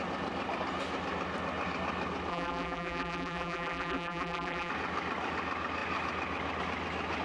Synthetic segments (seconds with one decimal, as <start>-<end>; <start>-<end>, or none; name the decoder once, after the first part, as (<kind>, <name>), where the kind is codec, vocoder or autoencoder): 2.3-4.7 (vocoder, BigVGAN v2)